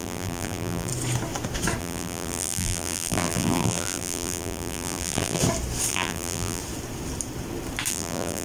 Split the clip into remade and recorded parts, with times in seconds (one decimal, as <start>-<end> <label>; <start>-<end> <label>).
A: 0.0-0.9 remade; 0.9-1.8 recorded; 1.8-5.4 remade; 5.4-5.9 recorded; 5.9-6.6 remade; 6.6-7.9 recorded; 7.9-8.4 remade